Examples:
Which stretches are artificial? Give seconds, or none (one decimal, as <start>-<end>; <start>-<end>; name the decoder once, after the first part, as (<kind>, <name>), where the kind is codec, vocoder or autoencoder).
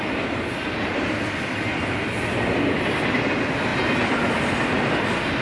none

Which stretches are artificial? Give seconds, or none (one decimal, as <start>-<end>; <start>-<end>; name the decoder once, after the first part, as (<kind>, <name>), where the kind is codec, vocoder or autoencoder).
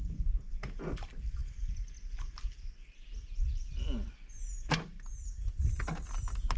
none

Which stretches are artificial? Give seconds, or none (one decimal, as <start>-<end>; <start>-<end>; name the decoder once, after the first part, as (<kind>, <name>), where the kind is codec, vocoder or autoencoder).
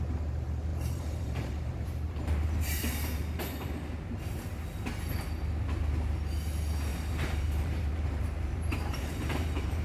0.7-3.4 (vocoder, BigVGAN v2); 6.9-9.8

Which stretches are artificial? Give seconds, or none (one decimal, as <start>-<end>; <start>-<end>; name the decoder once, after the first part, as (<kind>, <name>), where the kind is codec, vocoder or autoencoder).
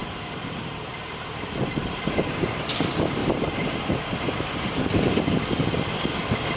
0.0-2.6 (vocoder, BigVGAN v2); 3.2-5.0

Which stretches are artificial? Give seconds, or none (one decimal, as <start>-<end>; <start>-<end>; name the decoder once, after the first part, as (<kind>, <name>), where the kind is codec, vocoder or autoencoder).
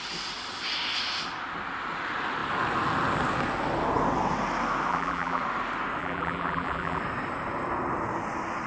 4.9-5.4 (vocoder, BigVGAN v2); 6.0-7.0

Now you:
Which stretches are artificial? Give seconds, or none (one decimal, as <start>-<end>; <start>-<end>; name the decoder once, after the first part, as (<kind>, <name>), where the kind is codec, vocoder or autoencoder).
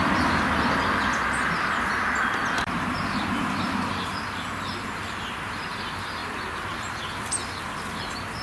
2.4-4.1 (vocoder, BigVGAN v2); 6.2-6.9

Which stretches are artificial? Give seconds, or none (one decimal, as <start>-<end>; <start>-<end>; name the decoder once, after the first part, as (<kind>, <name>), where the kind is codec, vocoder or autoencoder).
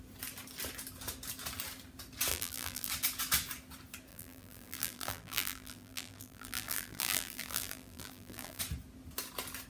2.3-2.9 (vocoder, BigVGAN v2); 4.1-8.6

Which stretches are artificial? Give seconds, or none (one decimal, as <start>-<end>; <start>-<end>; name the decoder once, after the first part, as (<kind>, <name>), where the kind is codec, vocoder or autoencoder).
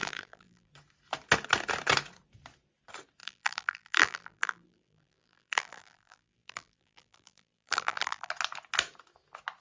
0.0-0.7 (vocoder, BigVGAN v2); 3.2-8.3